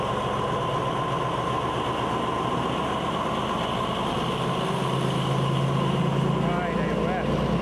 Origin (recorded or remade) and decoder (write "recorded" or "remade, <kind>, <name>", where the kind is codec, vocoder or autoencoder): recorded